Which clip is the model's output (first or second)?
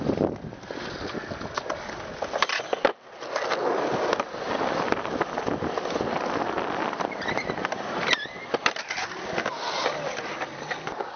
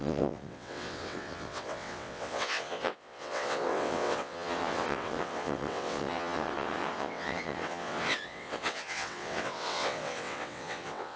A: second